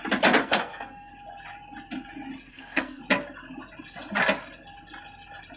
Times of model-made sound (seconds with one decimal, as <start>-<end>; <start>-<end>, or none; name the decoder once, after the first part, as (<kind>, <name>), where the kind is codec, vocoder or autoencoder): 0.4-1.1 (codec, SNAC); 2.5-3.0